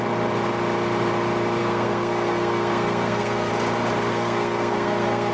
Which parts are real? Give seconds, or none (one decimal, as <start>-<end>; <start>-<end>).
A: 0.0-1.6; 3.5-4.1